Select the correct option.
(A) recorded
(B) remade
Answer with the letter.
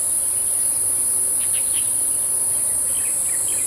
A